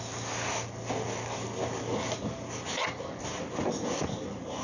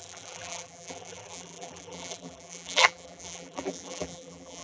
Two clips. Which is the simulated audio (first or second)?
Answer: second